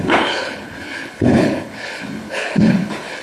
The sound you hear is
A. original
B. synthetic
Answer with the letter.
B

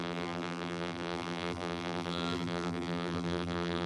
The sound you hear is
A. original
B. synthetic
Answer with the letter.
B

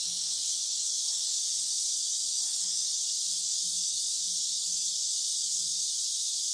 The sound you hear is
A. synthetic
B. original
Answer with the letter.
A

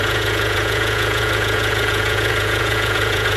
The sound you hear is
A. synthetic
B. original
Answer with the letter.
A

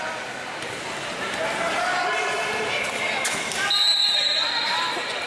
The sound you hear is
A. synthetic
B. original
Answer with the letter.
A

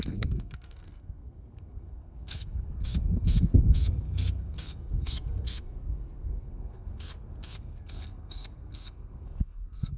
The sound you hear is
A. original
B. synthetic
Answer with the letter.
B